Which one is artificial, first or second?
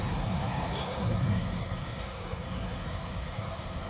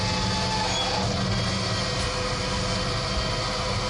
first